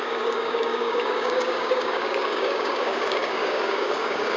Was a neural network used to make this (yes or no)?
yes